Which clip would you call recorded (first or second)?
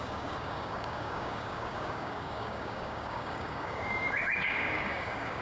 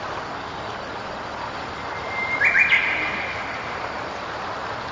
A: second